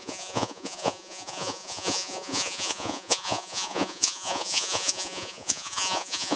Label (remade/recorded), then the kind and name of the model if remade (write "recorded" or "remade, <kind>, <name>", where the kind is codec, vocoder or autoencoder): remade, vocoder, Vocos